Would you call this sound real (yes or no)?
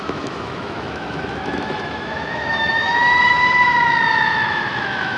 no